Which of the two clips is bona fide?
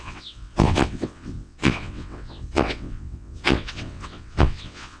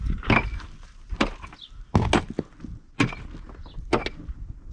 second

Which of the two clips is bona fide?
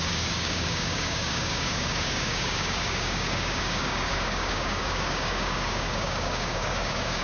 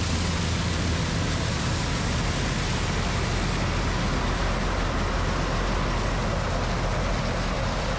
second